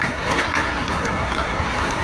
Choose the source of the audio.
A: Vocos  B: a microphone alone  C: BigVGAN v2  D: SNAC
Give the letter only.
D